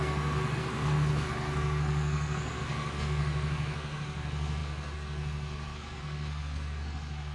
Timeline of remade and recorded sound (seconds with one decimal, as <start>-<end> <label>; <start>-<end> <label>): 0.0-7.3 remade